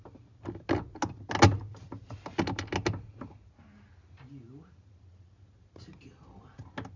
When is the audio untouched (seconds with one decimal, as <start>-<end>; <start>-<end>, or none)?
0.0-7.0